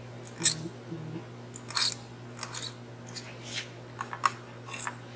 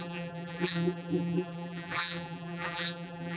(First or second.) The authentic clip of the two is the first